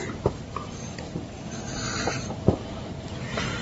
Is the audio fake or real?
fake